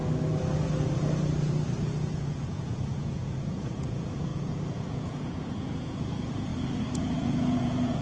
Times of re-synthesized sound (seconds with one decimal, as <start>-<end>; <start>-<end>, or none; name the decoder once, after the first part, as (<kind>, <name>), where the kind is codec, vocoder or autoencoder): 1.8-6.5 (vocoder, Vocos); 7.0-8.0